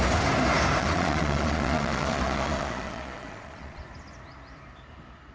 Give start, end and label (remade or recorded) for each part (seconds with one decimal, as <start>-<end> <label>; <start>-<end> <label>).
0.0-0.8 recorded; 0.8-3.8 remade; 3.8-5.3 recorded